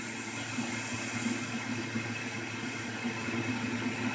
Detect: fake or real real